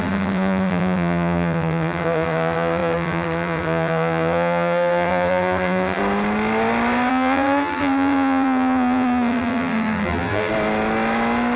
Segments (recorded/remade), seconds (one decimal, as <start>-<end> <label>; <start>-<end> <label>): 0.0-6.0 remade; 6.0-7.1 recorded; 7.1-10.5 remade; 10.5-11.6 recorded